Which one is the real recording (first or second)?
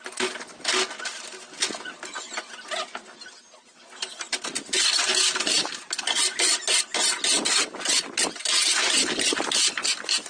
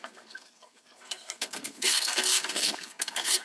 first